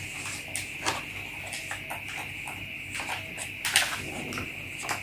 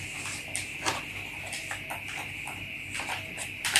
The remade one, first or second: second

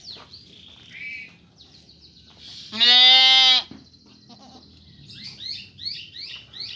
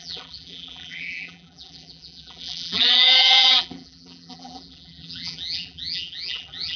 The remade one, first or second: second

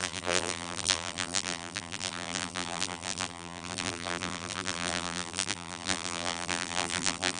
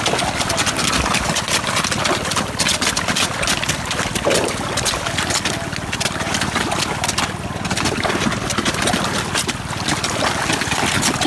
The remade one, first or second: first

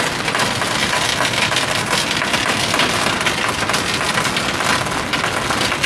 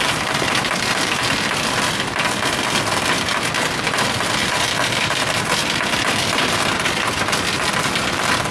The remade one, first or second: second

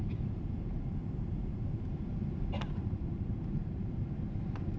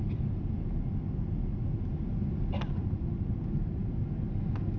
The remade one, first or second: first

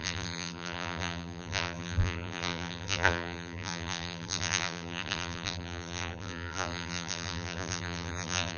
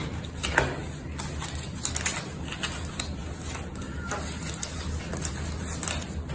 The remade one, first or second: first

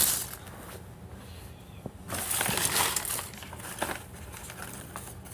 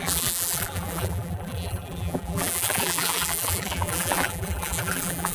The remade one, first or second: second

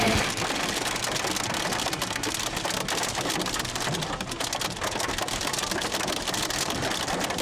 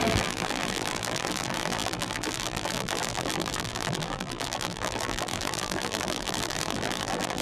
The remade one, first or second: second